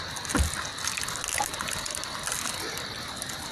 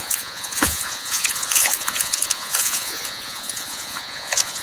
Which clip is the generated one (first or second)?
second